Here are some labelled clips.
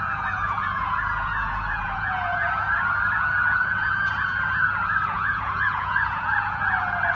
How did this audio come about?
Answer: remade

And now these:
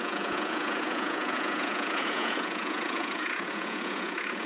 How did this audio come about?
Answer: remade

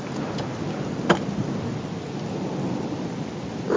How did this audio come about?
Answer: recorded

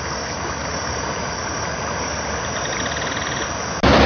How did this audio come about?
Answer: recorded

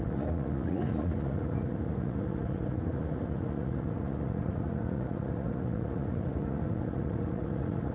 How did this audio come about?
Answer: remade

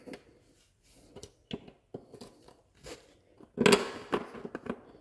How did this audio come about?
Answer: recorded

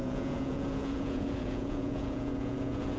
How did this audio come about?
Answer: remade